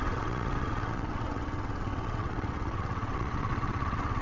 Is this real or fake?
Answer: fake